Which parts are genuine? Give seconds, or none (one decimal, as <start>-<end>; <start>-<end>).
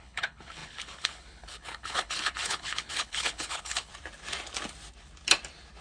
3.9-5.8